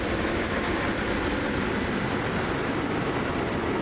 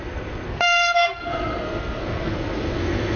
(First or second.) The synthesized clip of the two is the second